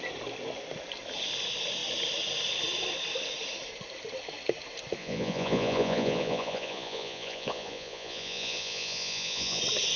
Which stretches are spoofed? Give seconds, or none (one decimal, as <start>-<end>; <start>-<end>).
5.0-9.6